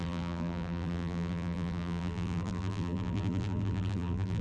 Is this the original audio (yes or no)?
no